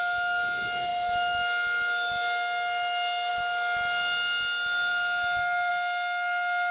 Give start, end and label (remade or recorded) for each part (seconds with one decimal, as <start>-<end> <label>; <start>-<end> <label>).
0.0-6.7 recorded